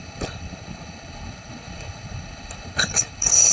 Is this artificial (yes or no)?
yes